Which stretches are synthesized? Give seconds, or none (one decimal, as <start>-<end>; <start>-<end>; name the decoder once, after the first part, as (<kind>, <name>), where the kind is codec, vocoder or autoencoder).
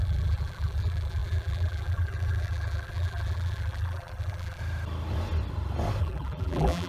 0.0-4.6 (vocoder, BigVGAN v2); 6.0-6.9